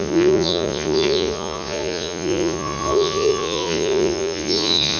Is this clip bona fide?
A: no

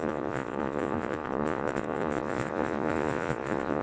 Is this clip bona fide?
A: no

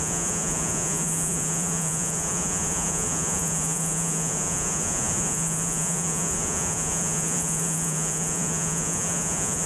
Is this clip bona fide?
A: no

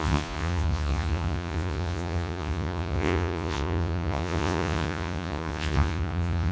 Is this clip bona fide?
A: no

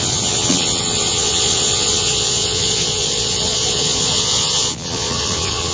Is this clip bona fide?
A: no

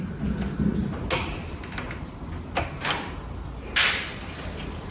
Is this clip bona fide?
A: yes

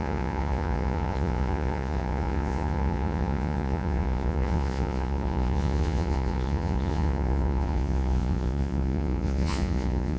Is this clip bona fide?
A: no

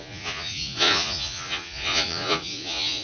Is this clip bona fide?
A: no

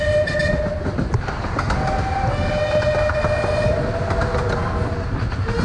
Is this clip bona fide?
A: yes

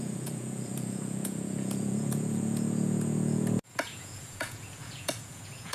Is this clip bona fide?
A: no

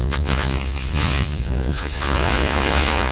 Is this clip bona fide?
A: no